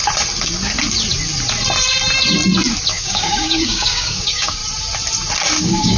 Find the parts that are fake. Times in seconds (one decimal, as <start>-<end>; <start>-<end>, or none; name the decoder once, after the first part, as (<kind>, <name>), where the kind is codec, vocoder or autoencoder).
2.9-4.6 (codec, DAC); 5.6-6.0